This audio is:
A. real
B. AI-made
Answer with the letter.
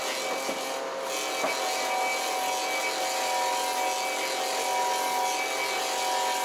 A